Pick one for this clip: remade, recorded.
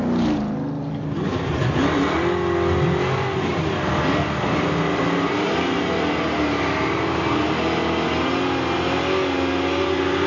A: recorded